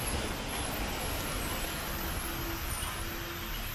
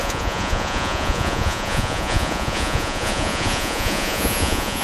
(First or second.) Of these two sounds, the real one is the first